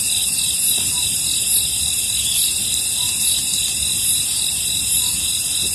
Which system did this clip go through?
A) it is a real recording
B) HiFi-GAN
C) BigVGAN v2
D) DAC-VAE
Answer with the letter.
A